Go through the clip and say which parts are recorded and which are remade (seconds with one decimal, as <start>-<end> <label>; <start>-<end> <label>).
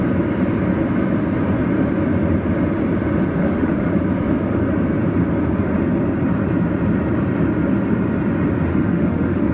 0.0-3.4 recorded; 3.4-3.9 remade; 3.9-8.7 recorded; 8.7-9.5 remade